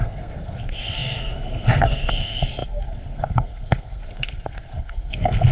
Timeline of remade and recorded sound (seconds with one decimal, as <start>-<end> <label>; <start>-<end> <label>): 0.0-5.5 remade